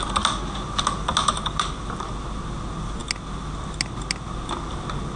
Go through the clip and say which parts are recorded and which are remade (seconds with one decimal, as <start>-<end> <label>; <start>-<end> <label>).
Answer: 0.0-1.2 recorded; 1.2-1.7 remade; 1.7-5.2 recorded